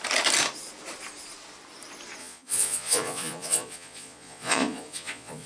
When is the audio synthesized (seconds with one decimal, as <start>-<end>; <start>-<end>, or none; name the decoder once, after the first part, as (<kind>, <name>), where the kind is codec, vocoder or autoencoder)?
2.2-5.5 (vocoder, Vocos)